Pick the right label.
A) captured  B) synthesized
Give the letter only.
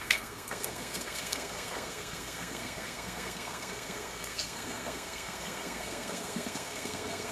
B